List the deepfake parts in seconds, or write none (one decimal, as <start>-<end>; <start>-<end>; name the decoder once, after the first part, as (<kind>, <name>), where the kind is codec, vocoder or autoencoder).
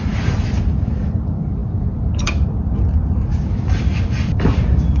0.0-5.0 (vocoder, BigVGAN v2)